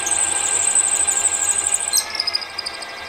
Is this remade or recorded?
recorded